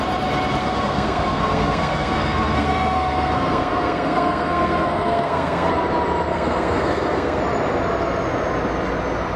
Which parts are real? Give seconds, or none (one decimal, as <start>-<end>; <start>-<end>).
0.0-0.6; 5.7-6.3; 7.4-9.4